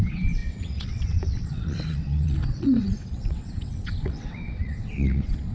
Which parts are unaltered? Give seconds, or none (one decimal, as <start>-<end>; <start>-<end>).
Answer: none